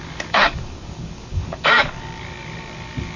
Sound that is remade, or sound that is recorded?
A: remade